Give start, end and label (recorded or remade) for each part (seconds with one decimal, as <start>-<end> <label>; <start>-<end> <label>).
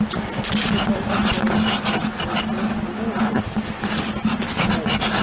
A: 0.0-5.2 recorded